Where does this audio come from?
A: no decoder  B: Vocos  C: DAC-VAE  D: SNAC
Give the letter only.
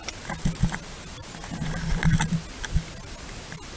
A